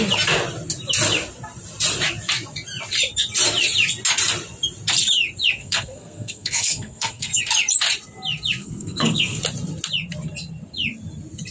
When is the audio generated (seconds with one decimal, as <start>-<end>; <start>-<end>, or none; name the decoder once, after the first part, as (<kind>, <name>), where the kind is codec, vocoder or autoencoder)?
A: 5.6-7.4 (codec, SNAC); 8.6-9.4